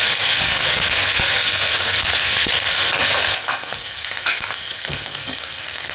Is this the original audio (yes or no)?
no